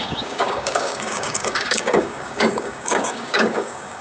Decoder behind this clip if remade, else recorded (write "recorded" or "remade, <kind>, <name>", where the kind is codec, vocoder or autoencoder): remade, codec, DAC